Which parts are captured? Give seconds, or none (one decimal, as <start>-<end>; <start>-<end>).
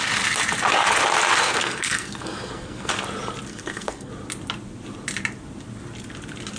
0.0-1.4; 2.9-3.5; 4.1-6.6